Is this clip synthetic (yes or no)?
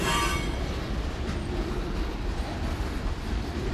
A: yes